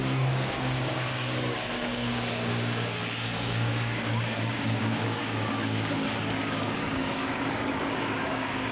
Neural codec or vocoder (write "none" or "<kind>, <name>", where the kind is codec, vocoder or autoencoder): codec, DAC